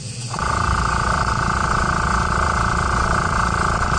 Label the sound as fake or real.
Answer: fake